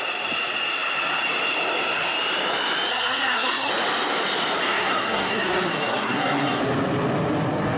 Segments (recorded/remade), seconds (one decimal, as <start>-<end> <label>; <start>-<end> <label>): 0.0-2.9 recorded; 2.9-3.7 remade; 3.7-4.6 recorded; 4.6-6.6 remade; 6.6-7.8 recorded